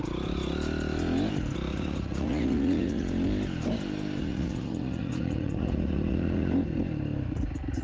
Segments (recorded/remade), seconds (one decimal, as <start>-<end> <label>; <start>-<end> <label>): 0.0-1.7 recorded; 1.7-3.1 remade; 3.1-4.2 recorded; 4.2-6.5 remade; 6.5-7.8 recorded